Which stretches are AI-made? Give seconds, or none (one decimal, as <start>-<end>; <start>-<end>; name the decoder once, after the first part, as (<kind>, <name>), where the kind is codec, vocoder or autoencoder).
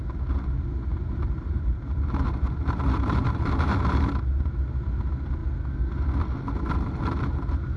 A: 0.9-4.1 (vocoder, BigVGAN v2)